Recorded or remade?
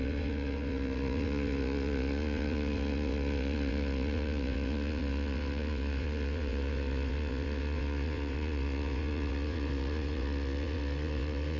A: remade